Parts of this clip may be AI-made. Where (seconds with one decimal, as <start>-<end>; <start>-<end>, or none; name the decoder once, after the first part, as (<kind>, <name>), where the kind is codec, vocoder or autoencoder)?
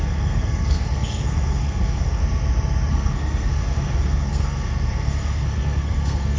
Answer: 0.0-2.2 (codec, SNAC); 2.9-6.4